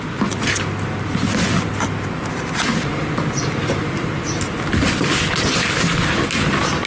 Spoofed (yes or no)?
no